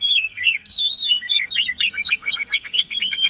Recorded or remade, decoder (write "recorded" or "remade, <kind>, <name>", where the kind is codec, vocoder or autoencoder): remade, codec, SNAC